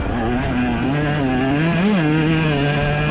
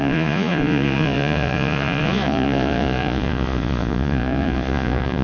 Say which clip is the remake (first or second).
second